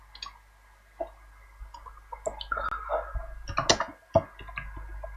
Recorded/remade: recorded